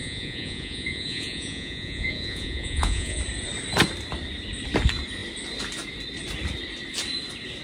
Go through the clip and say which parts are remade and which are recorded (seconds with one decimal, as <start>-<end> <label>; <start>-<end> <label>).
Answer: 0.0-3.2 remade; 3.2-7.6 recorded